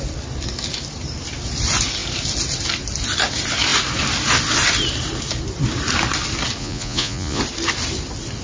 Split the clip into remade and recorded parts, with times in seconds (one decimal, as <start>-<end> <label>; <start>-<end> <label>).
0.0-6.6 recorded; 6.6-7.4 remade; 7.4-8.4 recorded